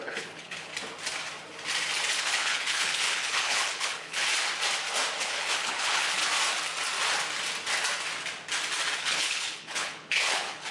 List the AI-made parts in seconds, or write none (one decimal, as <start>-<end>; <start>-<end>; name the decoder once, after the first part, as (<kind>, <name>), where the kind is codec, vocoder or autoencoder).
0.0-0.7 (codec, HILCodec); 2.2-4.2; 5.2-6.2; 9.0-10.7

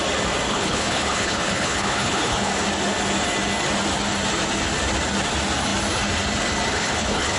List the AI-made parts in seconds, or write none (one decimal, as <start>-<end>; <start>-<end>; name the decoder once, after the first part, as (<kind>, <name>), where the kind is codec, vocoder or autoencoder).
0.5-2.5 (codec, HILCodec); 6.7-7.4

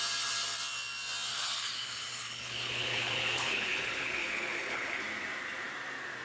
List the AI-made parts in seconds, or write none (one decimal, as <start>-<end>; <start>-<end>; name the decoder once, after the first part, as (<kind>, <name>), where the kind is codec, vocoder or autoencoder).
1.3-5.0 (codec, HILCodec)

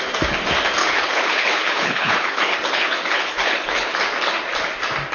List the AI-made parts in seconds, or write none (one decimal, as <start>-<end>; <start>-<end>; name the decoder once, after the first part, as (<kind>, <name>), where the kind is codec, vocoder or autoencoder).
0.8-3.9 (codec, HILCodec)

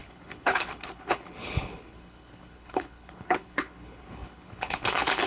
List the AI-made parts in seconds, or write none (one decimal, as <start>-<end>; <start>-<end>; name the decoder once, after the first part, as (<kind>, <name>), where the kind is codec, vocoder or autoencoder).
0.0-5.3 (codec, HILCodec)

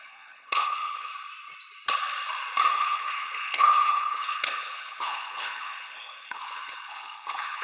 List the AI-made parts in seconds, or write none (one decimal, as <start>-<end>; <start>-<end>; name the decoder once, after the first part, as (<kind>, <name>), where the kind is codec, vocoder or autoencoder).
0.0-1.1 (codec, HILCodec); 2.7-7.6